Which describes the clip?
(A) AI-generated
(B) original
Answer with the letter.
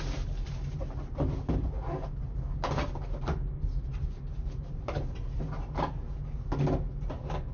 B